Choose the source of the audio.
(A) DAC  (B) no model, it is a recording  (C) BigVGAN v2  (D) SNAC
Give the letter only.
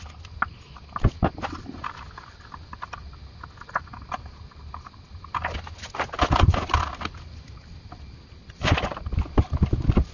B